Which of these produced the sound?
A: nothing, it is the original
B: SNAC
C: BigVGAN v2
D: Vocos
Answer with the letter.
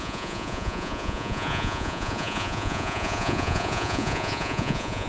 D